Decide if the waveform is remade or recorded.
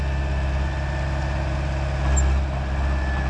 recorded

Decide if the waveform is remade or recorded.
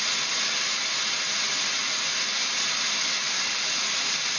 recorded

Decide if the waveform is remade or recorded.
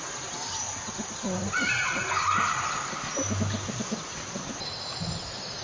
recorded